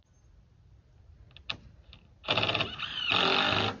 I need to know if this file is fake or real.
real